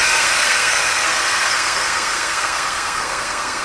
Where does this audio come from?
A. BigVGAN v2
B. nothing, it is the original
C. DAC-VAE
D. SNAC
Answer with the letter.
D